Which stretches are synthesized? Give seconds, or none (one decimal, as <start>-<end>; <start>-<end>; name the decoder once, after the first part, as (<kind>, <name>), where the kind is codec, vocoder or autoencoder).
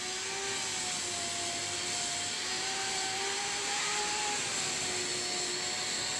2.5-4.5 (vocoder, BigVGAN v2)